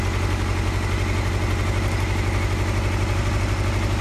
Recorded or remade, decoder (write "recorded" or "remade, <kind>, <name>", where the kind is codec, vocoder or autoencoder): recorded